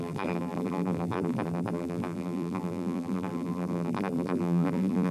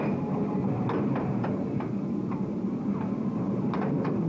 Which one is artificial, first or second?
first